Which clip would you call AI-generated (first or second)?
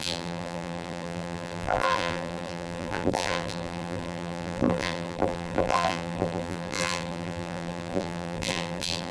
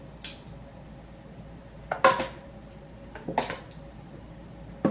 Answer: first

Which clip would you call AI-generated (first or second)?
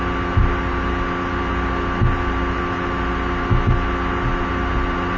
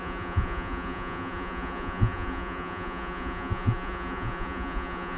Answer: second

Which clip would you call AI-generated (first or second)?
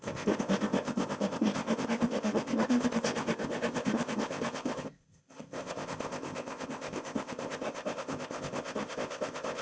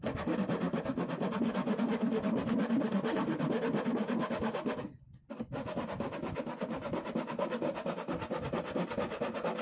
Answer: first